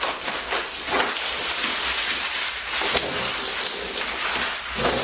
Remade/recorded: recorded